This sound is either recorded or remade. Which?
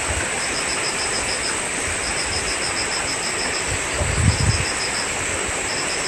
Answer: recorded